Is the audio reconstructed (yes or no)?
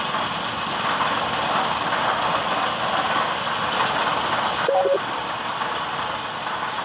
no